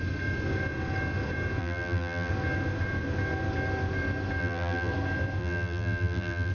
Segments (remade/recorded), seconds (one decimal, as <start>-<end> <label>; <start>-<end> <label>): 0.0-1.6 recorded; 1.6-2.3 remade; 2.3-4.4 recorded; 4.4-4.9 remade; 4.9-5.4 recorded; 5.4-6.5 remade